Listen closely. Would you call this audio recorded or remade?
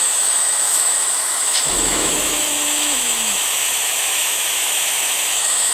remade